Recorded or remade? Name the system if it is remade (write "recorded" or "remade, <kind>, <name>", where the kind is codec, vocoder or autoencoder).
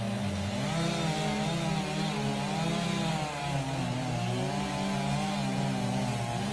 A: recorded